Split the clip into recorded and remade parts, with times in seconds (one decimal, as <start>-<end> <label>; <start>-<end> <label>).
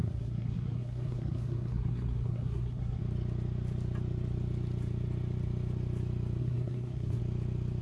0.0-3.0 remade; 3.0-6.4 recorded; 6.4-7.2 remade; 7.2-7.8 recorded